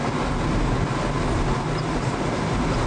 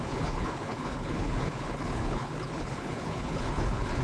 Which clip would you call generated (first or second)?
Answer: second